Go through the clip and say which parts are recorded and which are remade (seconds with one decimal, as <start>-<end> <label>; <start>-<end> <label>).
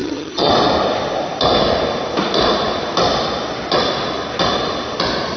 0.0-0.5 remade; 0.5-5.4 recorded